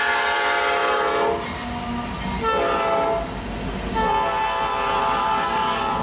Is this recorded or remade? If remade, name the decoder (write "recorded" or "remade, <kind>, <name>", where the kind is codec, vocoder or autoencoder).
recorded